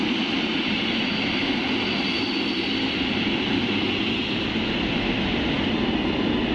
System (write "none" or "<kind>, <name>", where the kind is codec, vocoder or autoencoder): none